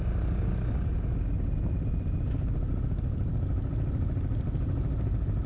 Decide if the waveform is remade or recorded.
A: recorded